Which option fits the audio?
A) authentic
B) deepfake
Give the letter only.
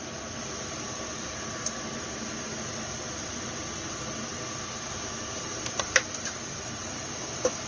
A